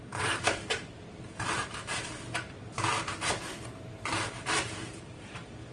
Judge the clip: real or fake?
fake